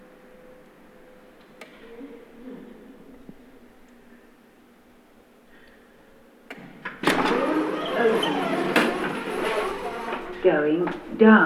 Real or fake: real